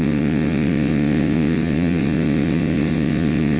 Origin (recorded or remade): remade